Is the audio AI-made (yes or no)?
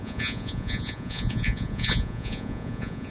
yes